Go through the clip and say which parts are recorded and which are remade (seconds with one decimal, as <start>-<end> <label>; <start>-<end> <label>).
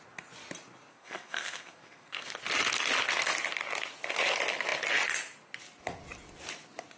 0.0-0.9 recorded; 0.9-2.3 remade; 2.3-7.0 recorded